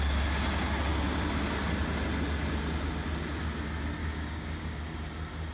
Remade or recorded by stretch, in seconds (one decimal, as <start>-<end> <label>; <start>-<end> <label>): 0.0-4.0 recorded; 4.0-4.8 remade; 4.8-5.5 recorded